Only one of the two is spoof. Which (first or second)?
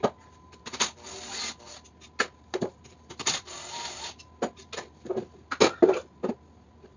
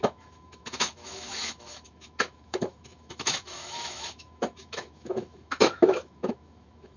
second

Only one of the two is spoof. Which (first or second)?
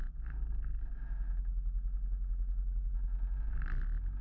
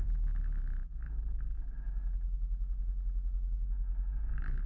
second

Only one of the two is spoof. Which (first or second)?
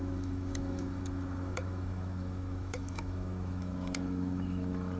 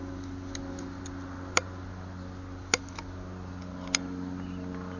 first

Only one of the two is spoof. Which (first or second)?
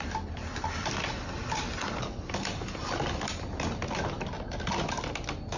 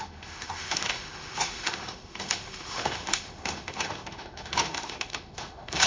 second